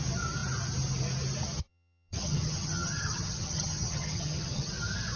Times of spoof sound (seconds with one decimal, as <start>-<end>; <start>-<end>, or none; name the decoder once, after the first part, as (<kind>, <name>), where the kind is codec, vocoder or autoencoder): 1.6-4.7 (vocoder, HiFi-GAN)